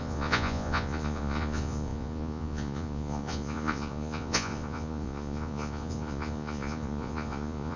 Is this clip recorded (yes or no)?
no